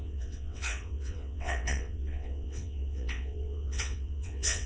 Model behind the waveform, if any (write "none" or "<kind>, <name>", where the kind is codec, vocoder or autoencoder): vocoder, WaveNeXt